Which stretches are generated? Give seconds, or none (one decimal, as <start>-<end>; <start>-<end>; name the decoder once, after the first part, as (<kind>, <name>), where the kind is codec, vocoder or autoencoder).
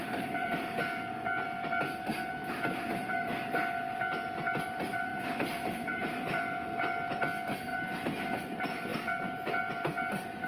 0.0-1.8 (vocoder, BigVGAN v2); 5.1-7.2; 8.9-9.7